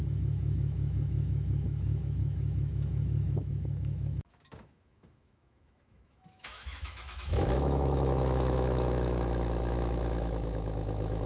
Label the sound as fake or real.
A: fake